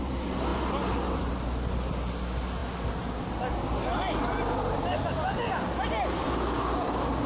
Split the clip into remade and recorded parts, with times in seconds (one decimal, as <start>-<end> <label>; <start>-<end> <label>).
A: 0.0-7.3 recorded